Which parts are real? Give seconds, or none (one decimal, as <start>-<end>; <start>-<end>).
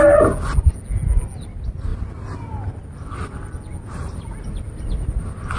0.0-5.6